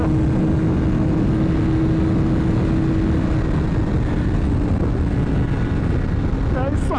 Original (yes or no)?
yes